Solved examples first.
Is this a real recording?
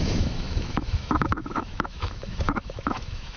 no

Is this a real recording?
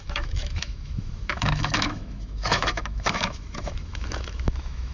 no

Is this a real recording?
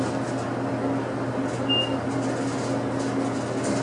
yes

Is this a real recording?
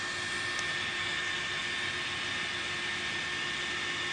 yes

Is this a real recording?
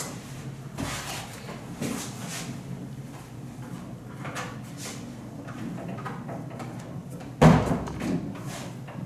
yes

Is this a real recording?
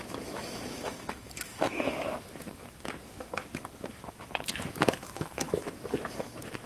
no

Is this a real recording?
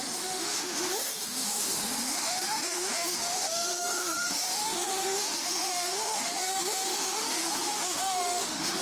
no